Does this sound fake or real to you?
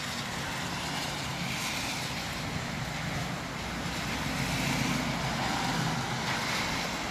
real